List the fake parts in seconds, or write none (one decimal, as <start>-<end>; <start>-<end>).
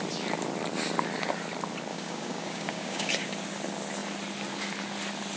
1.9-3.1